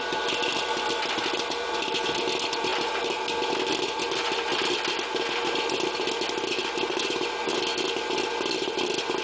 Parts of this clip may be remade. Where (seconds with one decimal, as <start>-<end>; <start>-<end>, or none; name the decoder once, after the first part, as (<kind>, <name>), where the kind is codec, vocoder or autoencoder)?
none